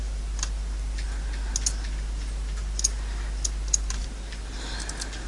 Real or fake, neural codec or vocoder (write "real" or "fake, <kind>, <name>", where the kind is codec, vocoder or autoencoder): real